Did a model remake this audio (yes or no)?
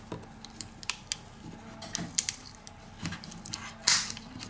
no